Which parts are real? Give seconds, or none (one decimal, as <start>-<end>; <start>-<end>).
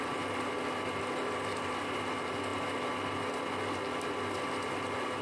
0.0-5.2